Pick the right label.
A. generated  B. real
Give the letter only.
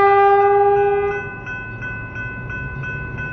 B